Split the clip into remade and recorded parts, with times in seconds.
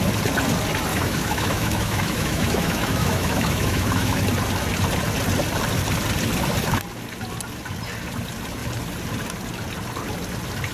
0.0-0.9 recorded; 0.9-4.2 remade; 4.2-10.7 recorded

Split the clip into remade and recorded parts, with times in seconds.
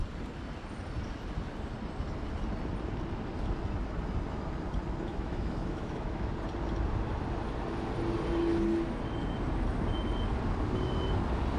0.0-5.1 recorded; 5.1-6.3 remade; 6.3-11.6 recorded